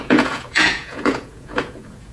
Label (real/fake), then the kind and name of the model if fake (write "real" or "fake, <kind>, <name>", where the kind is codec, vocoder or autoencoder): fake, vocoder, Vocos